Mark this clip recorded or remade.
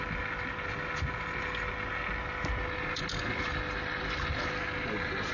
recorded